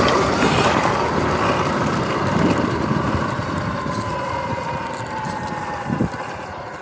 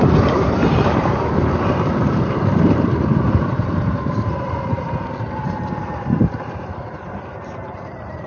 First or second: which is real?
first